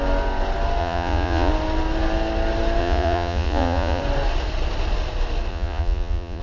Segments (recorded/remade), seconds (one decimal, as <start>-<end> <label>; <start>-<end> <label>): 0.0-0.8 recorded; 0.8-1.5 remade; 1.5-2.8 recorded; 2.8-4.0 remade; 4.0-5.5 recorded; 5.5-6.4 remade